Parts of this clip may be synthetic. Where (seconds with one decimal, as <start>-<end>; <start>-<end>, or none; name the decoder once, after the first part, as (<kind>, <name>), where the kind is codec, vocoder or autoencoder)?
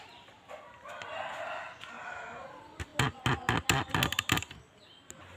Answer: none